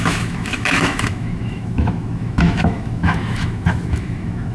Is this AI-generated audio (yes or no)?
yes